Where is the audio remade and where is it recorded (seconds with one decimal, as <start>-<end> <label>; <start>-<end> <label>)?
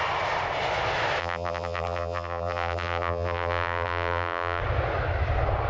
0.0-1.2 recorded; 1.2-4.6 remade; 4.6-5.7 recorded